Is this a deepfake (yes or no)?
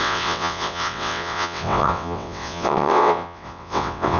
yes